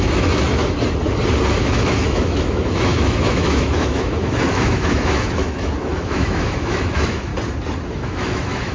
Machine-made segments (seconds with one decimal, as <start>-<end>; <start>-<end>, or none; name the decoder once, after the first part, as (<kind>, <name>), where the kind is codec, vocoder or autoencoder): 0.0-0.6 (autoencoder, DAC-VAE); 1.6-7.3; 7.9-8.7